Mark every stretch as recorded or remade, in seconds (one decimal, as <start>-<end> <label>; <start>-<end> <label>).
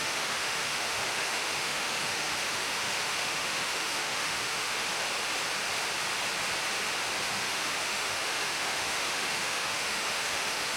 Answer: 0.0-4.9 remade; 4.9-7.2 recorded; 7.2-10.8 remade